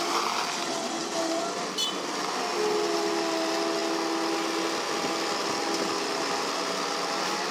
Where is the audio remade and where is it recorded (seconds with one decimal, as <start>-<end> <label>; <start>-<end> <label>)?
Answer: 0.0-7.5 recorded